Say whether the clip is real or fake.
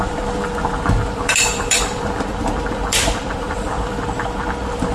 fake